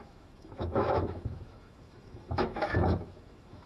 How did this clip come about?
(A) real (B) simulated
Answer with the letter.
B